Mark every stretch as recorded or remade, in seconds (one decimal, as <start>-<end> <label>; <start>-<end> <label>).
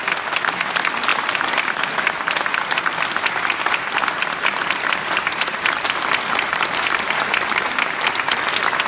0.0-5.2 recorded; 5.2-7.8 remade; 7.8-8.9 recorded